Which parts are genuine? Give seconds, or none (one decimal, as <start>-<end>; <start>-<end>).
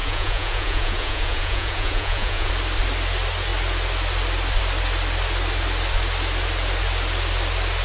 2.5-7.8